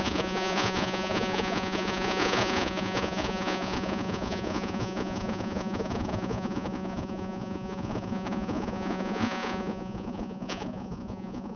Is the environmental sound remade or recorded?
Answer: remade